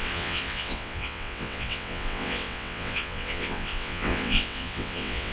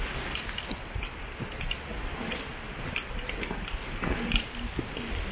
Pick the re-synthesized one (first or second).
first